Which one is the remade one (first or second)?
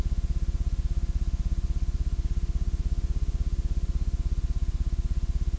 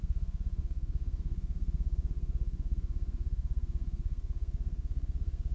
second